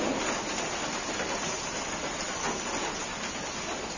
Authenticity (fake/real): real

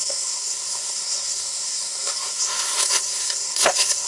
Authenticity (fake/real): fake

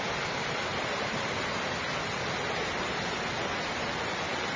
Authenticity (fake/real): real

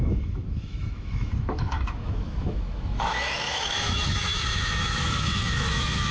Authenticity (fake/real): fake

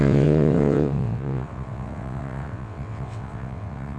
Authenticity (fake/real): fake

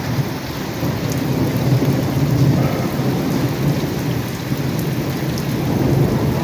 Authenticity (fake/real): real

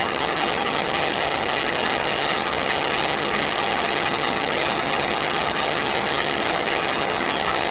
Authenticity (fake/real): fake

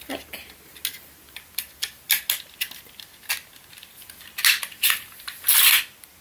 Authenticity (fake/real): real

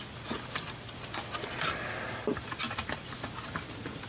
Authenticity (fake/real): real